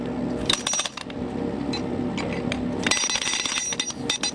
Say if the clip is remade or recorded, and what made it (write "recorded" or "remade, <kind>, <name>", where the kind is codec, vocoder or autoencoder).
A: recorded